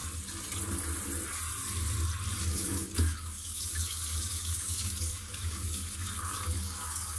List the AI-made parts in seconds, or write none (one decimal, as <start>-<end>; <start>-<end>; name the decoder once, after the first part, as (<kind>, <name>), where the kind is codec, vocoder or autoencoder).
2.4-7.2 (codec, DAC)